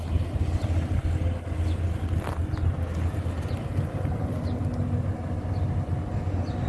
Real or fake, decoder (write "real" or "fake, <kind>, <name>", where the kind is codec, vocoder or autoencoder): real